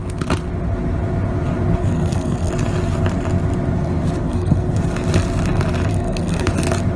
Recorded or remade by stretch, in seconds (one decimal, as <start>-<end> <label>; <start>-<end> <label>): 0.0-1.8 recorded; 1.8-2.5 remade; 2.5-4.2 recorded; 4.2-4.8 remade; 4.8-5.9 recorded; 5.9-6.5 remade; 6.5-7.0 recorded